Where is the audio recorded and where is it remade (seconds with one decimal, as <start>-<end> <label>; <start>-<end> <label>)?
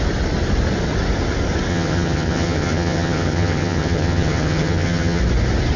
0.0-1.7 recorded; 1.7-5.2 remade; 5.2-5.8 recorded